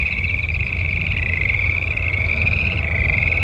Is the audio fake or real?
fake